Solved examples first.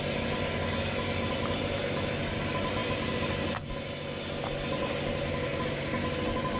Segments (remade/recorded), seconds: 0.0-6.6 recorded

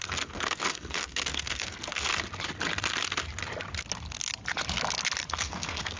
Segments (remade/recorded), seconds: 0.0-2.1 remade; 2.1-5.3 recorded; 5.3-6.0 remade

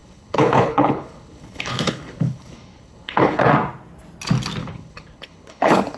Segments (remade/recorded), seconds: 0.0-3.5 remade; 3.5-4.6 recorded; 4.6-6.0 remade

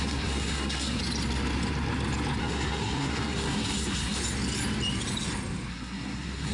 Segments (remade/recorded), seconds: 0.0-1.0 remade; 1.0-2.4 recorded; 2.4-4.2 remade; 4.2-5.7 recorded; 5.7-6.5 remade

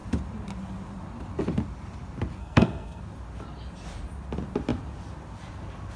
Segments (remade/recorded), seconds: 0.0-2.4 recorded; 2.4-3.0 remade; 3.0-6.0 recorded